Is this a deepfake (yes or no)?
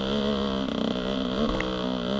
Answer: no